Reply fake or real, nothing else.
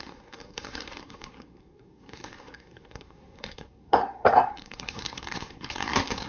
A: fake